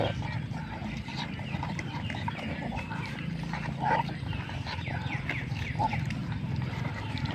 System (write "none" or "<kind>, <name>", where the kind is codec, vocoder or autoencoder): none